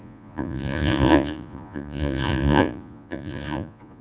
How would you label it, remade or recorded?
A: remade